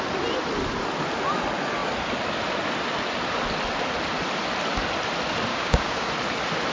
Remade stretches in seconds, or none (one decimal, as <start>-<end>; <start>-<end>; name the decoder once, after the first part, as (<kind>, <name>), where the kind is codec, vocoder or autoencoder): 5.5-6.1 (codec, DAC)